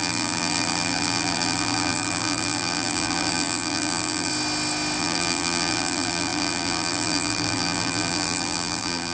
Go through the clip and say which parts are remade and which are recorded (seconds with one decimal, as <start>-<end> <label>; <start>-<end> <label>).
0.0-4.3 remade; 4.3-5.0 recorded; 5.0-9.1 remade